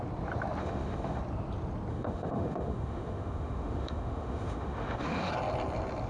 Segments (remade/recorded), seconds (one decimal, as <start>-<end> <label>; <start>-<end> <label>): 0.0-0.6 recorded; 0.6-1.2 remade; 1.2-1.9 recorded; 1.9-5.3 remade; 5.3-6.1 recorded